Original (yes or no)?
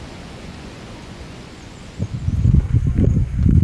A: no